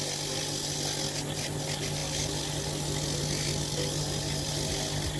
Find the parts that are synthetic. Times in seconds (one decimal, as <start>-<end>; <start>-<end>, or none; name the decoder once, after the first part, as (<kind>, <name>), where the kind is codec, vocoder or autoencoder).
none